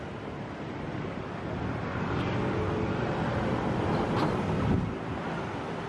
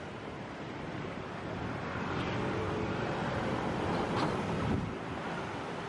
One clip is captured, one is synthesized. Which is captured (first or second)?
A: first